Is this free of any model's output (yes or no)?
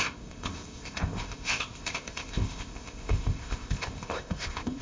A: no